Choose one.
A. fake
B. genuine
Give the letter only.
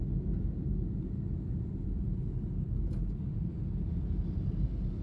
B